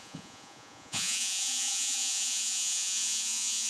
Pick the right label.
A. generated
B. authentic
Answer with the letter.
A